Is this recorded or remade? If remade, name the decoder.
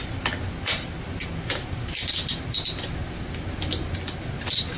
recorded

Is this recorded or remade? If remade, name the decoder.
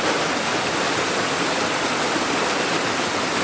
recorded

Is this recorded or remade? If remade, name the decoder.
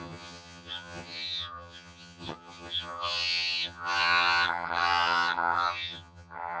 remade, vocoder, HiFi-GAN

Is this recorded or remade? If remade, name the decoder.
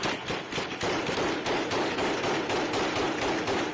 recorded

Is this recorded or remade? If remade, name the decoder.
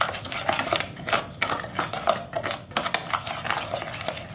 recorded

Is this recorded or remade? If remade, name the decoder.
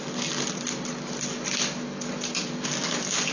recorded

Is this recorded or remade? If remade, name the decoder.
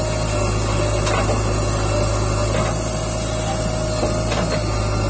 recorded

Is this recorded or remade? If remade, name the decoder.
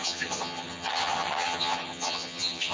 remade, vocoder, HiFi-GAN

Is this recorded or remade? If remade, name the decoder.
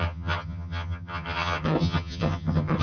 remade, vocoder, HiFi-GAN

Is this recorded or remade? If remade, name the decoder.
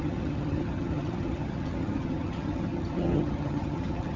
remade, vocoder, HiFi-GAN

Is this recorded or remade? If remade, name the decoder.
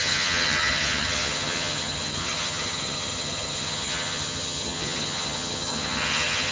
remade, vocoder, HiFi-GAN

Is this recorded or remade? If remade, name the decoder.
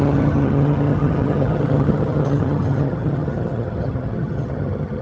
remade, vocoder, HiFi-GAN